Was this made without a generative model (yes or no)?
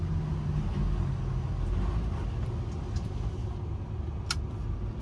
yes